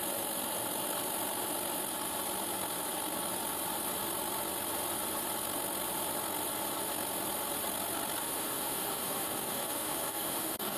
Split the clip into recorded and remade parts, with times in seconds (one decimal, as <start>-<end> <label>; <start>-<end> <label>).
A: 0.0-8.2 recorded; 8.2-10.8 remade